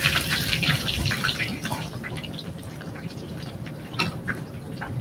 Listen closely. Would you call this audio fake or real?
fake